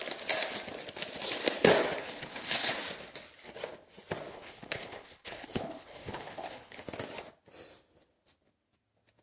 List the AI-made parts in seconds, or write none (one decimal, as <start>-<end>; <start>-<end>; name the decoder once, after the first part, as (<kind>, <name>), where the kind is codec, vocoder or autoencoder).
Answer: 2.0-2.7 (codec, HILCodec); 4.3-6.8